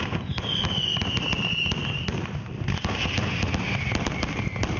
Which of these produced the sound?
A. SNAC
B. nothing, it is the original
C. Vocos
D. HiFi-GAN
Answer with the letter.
B